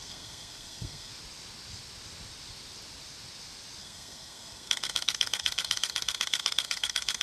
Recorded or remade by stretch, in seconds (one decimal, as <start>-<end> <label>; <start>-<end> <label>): 0.0-1.1 remade; 1.1-3.8 recorded; 3.8-7.2 remade